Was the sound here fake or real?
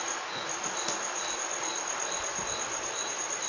real